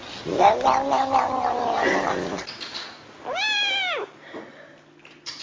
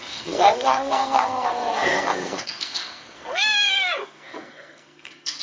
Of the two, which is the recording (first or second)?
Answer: first